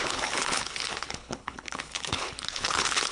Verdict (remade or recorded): remade